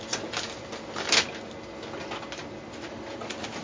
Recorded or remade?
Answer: recorded